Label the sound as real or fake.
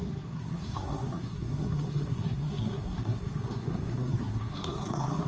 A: fake